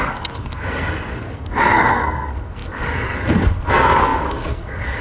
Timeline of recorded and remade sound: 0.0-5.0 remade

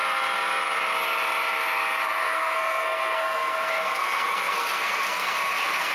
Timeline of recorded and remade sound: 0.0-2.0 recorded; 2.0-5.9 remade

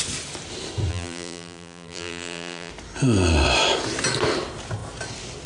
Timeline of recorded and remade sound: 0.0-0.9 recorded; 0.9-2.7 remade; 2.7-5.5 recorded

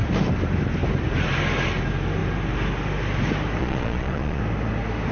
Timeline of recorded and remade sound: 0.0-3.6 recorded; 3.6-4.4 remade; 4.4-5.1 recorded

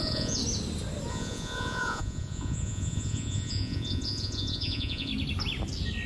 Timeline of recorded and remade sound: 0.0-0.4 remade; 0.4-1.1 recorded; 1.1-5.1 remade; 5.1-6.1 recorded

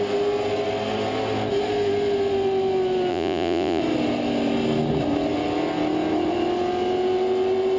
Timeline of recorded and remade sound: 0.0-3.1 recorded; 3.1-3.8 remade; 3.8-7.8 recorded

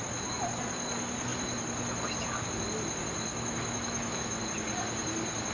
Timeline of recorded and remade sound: 0.0-3.3 recorded; 3.3-4.4 remade; 4.4-5.5 recorded

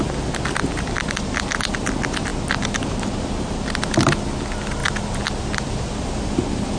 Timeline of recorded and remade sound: 0.0-6.8 recorded